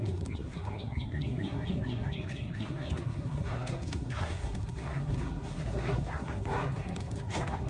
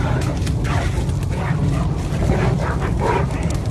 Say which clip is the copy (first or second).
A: first